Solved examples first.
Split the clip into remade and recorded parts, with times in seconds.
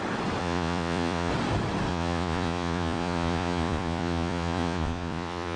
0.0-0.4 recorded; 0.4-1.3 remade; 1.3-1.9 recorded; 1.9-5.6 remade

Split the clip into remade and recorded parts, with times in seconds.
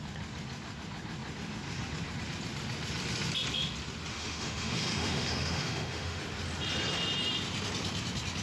0.0-4.1 recorded; 4.1-6.2 remade; 6.2-8.4 recorded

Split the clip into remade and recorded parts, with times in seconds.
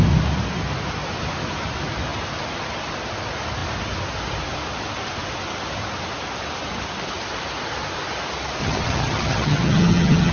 0.0-8.6 recorded; 8.6-10.3 remade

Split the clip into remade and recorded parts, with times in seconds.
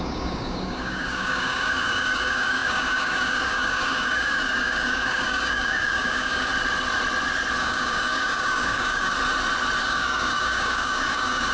0.0-6.5 remade; 6.5-7.6 recorded; 7.6-9.1 remade; 9.1-9.8 recorded; 9.8-11.5 remade